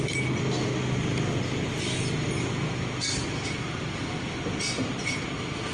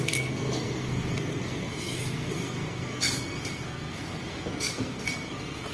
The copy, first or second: second